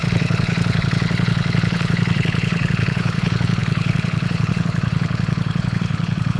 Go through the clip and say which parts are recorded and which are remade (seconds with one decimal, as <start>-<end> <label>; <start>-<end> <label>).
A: 0.0-6.4 remade